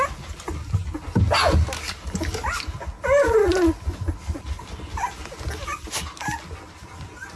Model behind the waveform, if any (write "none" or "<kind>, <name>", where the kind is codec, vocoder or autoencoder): none